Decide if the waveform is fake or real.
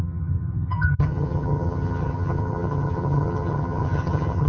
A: fake